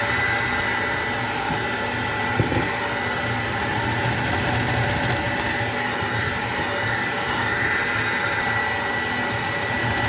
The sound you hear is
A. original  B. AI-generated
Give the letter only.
A